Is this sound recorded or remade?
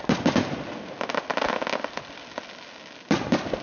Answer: recorded